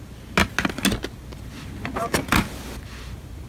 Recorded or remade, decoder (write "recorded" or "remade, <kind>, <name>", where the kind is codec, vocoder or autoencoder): recorded